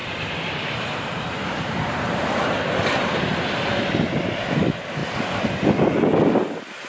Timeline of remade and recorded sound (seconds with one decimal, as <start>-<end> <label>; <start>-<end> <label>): 0.0-4.1 remade; 4.1-6.9 recorded